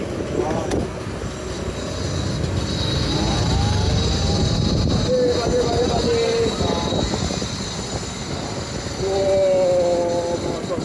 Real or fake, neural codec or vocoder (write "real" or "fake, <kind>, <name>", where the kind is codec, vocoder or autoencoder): real